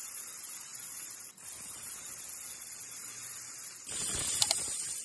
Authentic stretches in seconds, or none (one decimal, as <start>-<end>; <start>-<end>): 0.0-5.0